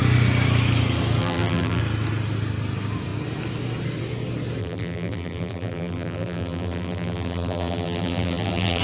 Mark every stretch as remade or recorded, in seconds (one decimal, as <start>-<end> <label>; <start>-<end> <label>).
0.0-1.2 recorded; 1.2-1.8 remade; 1.8-4.6 recorded; 4.6-8.8 remade